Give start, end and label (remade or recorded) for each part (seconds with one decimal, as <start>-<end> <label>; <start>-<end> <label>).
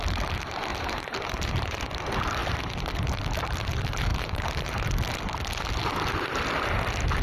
0.0-0.7 recorded; 0.7-1.8 remade; 1.8-4.1 recorded; 4.1-4.7 remade; 4.7-7.2 recorded